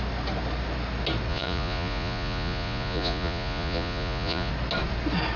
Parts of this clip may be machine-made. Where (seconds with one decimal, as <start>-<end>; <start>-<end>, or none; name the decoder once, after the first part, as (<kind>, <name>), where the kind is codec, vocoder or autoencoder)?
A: 1.3-4.5 (vocoder, Vocos)